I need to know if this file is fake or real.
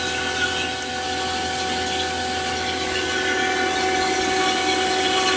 real